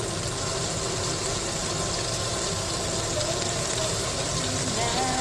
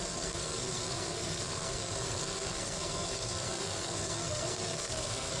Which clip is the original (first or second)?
first